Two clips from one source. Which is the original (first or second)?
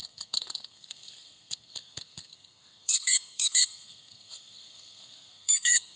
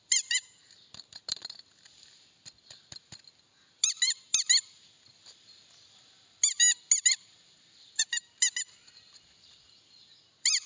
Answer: second